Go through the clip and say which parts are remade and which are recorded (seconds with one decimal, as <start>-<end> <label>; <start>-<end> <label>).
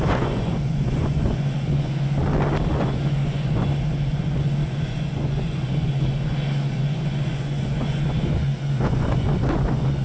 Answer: 0.0-2.2 remade; 2.2-2.8 recorded; 2.8-10.0 remade